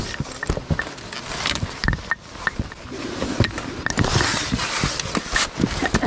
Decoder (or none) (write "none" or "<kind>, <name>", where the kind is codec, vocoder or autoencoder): none